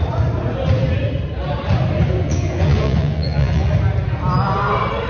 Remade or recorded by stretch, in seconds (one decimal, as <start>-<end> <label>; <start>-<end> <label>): 0.0-2.2 recorded; 2.2-3.7 remade; 3.7-5.1 recorded